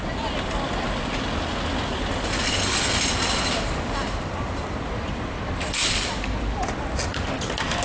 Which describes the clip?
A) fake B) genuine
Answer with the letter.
B